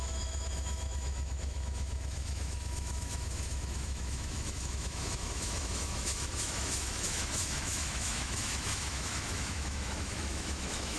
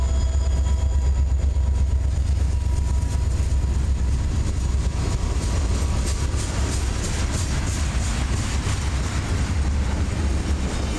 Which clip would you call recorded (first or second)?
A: second